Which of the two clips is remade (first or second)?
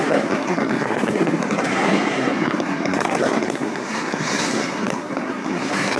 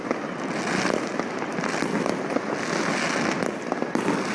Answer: first